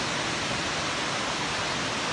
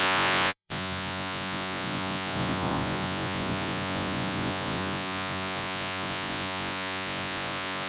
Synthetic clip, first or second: second